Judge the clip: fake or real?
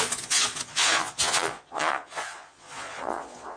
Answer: fake